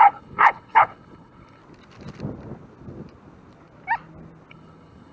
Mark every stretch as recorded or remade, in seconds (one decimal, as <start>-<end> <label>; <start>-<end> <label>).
0.0-1.6 remade; 1.6-4.5 recorded; 4.5-5.1 remade